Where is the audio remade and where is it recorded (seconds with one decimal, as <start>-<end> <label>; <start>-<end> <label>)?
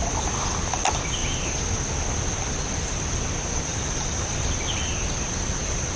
0.0-3.7 recorded; 3.7-4.5 remade; 4.5-6.0 recorded